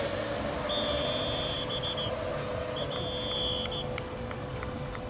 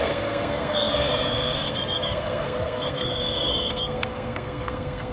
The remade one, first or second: second